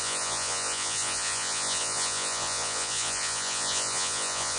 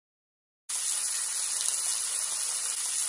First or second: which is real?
second